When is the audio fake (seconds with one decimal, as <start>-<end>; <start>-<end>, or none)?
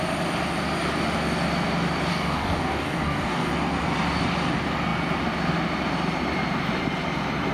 2.1-3.5